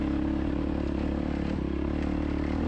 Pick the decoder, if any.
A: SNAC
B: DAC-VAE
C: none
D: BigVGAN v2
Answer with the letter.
C